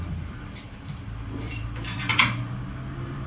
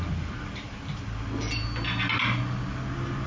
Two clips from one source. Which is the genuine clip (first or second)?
second